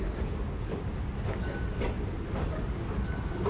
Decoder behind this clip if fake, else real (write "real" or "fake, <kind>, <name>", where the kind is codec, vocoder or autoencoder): real